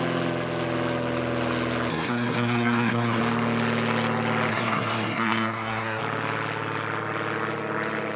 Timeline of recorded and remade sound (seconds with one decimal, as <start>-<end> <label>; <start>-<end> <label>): 0.0-1.9 recorded; 1.9-3.2 remade; 3.2-4.5 recorded; 4.5-6.0 remade; 6.0-8.2 recorded